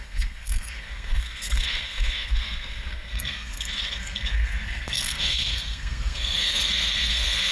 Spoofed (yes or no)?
yes